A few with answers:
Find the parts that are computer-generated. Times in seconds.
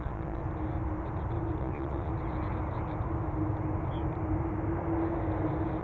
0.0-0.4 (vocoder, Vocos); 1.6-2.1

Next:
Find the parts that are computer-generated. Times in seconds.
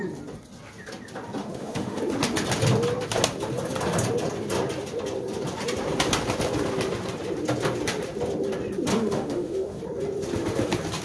1.4-2.0 (autoencoder, DAC-VAE); 8.9-9.8